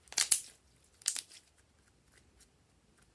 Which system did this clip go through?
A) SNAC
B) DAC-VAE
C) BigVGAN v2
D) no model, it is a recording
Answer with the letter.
D